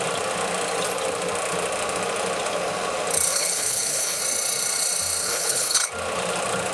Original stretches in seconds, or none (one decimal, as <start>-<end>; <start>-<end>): 0.0-3.3; 4.2-5.2; 5.9-6.7